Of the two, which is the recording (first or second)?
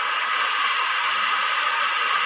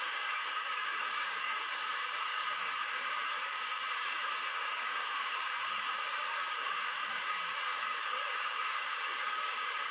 first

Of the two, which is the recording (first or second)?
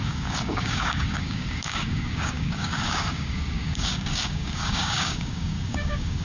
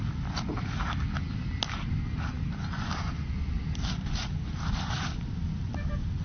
second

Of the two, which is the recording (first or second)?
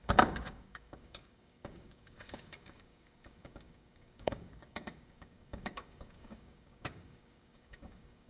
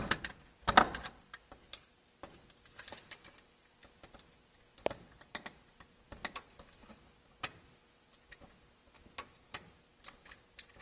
second